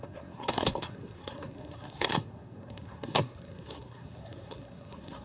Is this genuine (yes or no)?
no